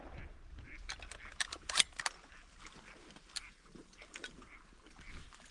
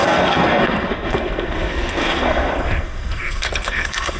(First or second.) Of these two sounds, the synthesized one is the second